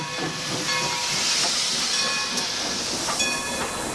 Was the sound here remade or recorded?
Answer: recorded